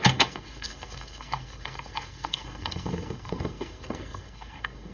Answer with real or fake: fake